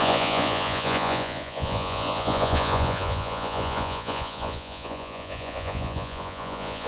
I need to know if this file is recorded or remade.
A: remade